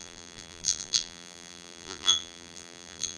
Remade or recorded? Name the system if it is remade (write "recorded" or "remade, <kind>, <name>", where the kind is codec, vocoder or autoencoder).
remade, vocoder, BigVGAN v2